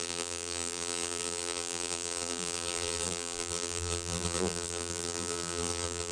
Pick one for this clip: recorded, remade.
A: remade